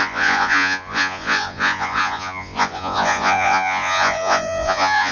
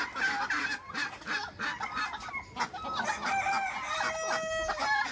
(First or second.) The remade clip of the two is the first